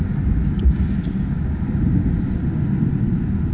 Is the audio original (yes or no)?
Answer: yes